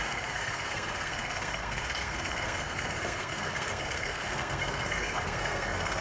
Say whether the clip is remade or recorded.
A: remade